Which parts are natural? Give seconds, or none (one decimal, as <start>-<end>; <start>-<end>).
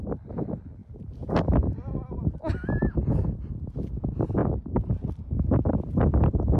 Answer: 0.0-4.4; 5.5-6.6